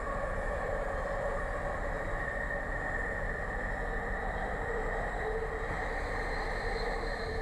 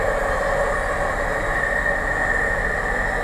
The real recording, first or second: second